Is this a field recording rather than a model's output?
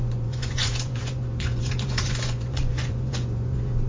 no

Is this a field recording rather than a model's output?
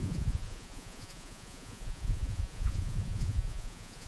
no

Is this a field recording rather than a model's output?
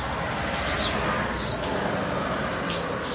yes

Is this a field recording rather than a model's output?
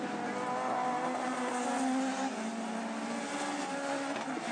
yes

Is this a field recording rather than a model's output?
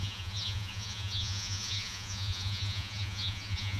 no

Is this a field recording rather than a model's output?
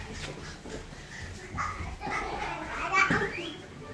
yes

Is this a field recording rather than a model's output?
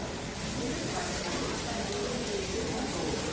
yes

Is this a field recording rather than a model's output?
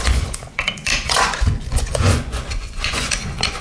no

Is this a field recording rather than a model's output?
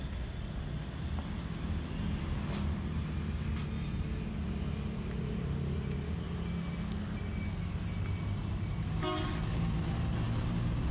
yes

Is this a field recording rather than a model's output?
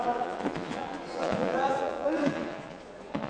no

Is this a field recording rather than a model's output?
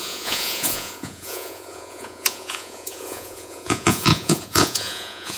no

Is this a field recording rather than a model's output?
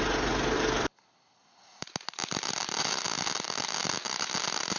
yes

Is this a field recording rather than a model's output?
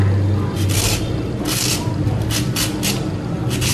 yes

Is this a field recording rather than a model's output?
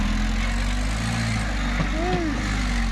yes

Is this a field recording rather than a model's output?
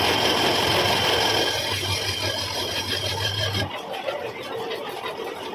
yes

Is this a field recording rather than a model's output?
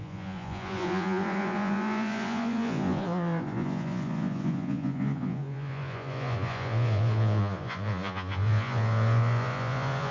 no